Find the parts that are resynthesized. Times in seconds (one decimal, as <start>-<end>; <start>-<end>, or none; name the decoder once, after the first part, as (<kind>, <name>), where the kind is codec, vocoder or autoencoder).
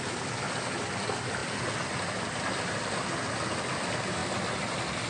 none